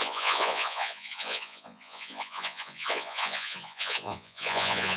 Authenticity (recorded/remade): remade